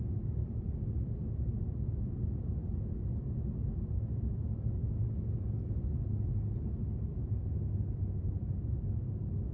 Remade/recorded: recorded